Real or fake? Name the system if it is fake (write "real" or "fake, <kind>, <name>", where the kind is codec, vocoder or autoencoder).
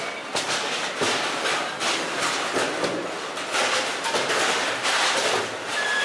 real